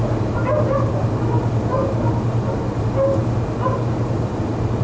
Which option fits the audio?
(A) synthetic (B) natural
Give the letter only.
B